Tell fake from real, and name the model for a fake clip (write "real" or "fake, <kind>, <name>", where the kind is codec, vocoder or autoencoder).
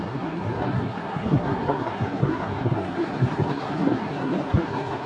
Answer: fake, codec, SNAC